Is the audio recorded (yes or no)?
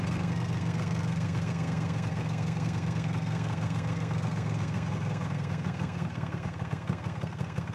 no